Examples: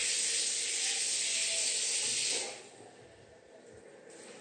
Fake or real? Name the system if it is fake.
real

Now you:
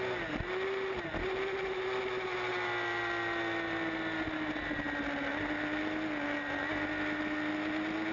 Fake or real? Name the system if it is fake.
real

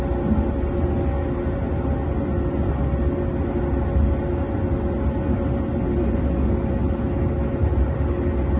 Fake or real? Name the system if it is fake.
real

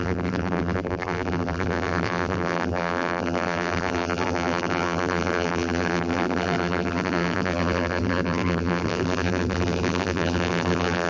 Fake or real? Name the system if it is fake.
fake, vocoder, BigVGAN v2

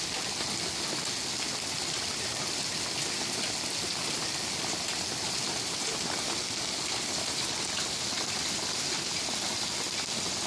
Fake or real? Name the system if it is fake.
real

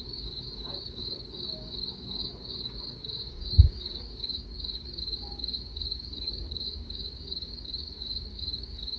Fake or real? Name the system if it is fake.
fake, codec, DAC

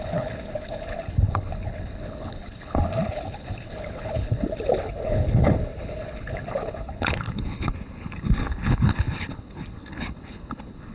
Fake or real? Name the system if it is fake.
fake, codec, HILCodec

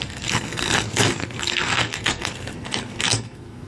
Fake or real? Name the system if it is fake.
fake, codec, SNAC